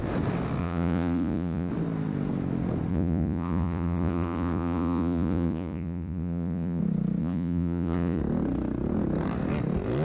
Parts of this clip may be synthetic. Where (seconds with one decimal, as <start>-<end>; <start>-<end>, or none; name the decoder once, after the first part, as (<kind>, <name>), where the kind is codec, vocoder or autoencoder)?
0.6-1.7 (vocoder, Vocos); 2.9-6.8; 7.2-8.2